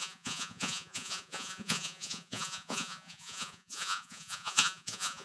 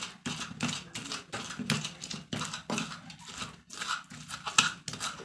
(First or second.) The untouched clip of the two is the second